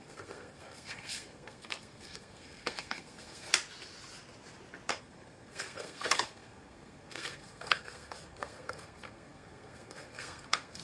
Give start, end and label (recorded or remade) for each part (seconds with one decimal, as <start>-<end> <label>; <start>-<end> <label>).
0.0-3.5 remade; 3.5-4.9 recorded; 4.9-10.8 remade